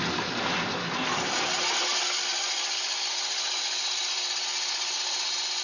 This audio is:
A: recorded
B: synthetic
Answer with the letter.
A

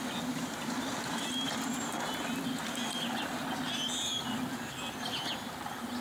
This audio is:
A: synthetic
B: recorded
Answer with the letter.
B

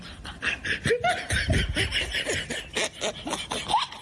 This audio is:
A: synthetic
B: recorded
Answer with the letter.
B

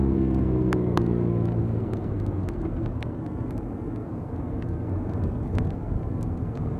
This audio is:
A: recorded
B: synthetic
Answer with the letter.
B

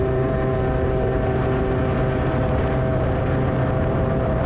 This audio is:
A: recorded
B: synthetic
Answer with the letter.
A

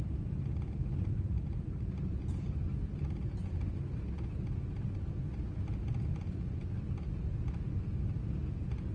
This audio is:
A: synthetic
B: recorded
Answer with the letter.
B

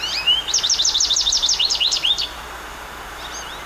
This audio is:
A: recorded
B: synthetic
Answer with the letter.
A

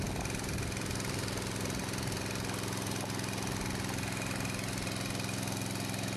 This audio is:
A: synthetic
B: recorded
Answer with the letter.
B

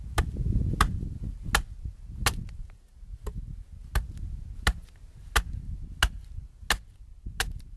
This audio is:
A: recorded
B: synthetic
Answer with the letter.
A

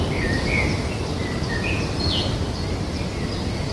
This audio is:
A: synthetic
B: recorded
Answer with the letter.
B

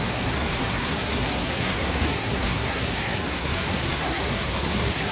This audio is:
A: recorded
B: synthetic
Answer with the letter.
B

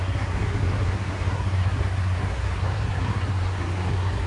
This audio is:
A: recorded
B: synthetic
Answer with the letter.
B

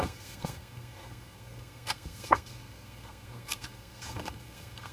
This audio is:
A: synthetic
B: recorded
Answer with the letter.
A